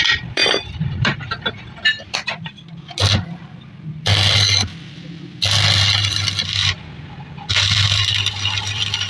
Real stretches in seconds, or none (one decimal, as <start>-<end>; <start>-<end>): 6.6-7.5